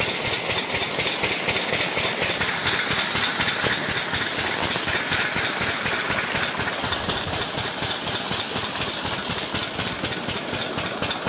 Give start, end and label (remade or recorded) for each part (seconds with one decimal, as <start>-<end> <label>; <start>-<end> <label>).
0.0-11.3 recorded